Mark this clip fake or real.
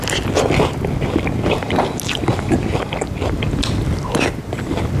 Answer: real